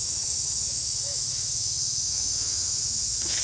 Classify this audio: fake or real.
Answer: fake